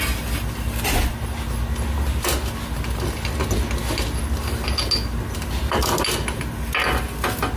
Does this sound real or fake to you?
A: real